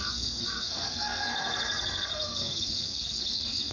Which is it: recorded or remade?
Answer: remade